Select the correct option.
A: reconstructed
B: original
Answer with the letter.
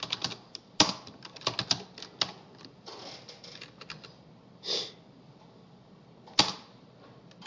B